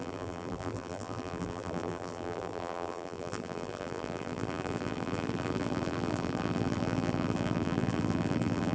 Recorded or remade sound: remade